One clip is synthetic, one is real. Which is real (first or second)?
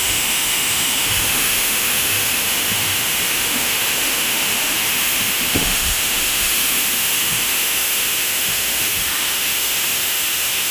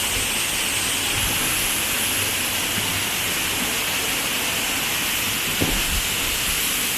second